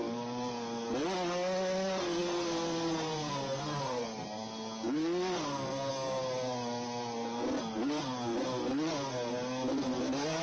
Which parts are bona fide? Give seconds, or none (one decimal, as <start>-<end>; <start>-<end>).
0.0-10.4